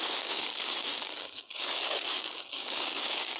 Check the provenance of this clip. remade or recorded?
remade